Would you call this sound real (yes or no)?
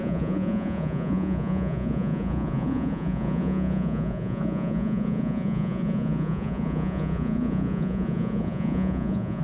no